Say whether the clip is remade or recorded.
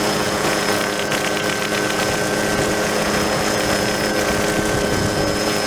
remade